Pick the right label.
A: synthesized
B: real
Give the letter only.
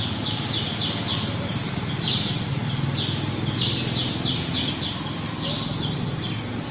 B